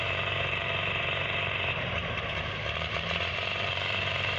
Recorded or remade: remade